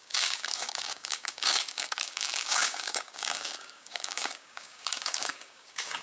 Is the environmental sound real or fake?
fake